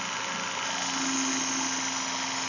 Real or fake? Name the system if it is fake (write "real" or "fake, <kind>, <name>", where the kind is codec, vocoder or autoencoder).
real